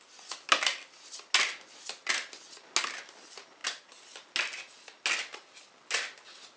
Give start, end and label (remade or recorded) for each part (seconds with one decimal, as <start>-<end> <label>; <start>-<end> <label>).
0.0-6.6 recorded